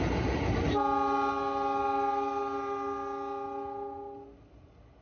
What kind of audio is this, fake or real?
real